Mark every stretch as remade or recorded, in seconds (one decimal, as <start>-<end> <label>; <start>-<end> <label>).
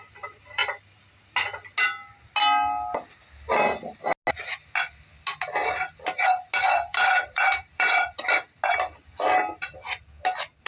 0.0-6.9 recorded; 6.9-7.9 remade; 7.9-10.7 recorded